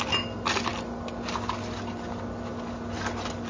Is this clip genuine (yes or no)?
yes